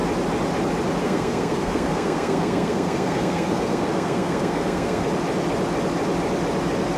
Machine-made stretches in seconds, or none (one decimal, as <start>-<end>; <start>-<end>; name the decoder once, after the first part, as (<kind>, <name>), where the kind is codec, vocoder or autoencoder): 1.0-5.1 (codec, SNAC)